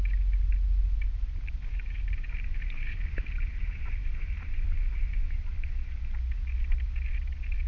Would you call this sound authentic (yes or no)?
yes